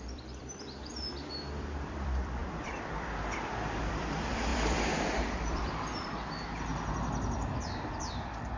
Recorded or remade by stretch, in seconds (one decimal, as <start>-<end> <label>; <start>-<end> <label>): 0.0-6.7 remade; 6.7-8.1 recorded; 8.1-8.6 remade